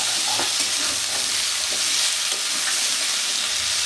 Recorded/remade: recorded